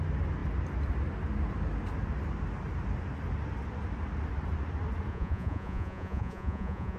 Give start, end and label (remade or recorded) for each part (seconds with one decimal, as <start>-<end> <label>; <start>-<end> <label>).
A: 0.0-5.1 recorded; 5.1-7.0 remade